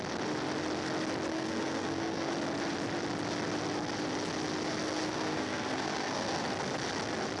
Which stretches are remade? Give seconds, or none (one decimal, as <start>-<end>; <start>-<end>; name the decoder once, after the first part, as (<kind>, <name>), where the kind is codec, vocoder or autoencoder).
1.3-2.3 (codec, SNAC); 5.0-6.4